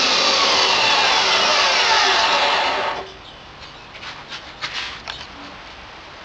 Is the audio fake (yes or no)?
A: no